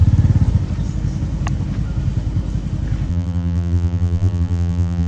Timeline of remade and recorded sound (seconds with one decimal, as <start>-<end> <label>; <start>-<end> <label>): 0.0-3.1 recorded; 3.1-5.1 remade